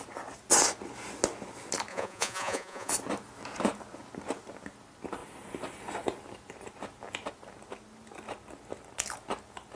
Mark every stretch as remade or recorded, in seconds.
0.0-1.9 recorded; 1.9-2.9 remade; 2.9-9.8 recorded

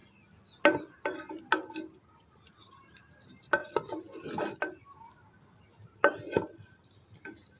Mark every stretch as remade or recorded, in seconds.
0.0-7.6 recorded

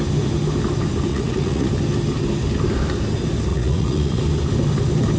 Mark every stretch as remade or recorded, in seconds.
0.0-1.1 recorded; 1.1-1.7 remade; 1.7-3.5 recorded; 3.5-4.2 remade; 4.2-5.2 recorded

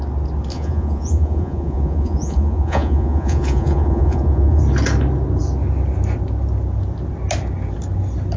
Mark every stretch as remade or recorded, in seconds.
0.0-0.5 recorded; 0.5-4.6 remade; 4.6-8.4 recorded

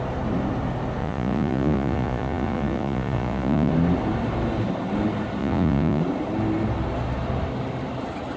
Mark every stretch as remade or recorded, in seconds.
0.0-1.0 recorded; 1.0-3.7 remade; 3.7-5.4 recorded; 5.4-6.0 remade; 6.0-8.4 recorded